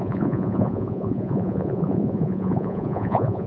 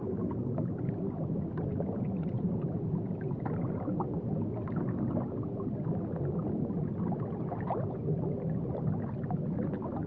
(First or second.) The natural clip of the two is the second